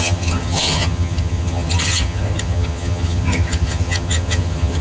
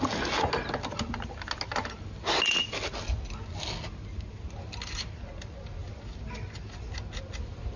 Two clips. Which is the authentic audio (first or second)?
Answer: second